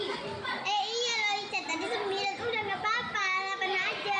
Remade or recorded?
recorded